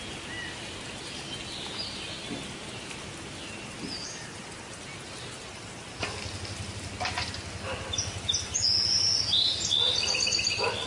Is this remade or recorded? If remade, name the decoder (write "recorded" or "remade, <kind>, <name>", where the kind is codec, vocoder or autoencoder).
recorded